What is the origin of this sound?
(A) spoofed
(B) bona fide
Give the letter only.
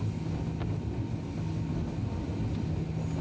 B